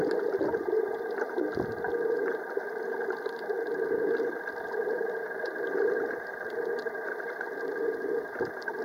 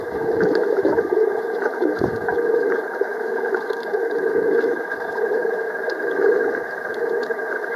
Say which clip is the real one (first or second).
first